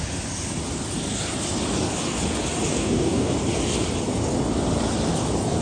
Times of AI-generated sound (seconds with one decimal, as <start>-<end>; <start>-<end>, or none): 2.7-3.3